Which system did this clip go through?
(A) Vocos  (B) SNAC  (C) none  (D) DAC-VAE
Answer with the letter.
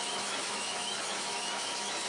D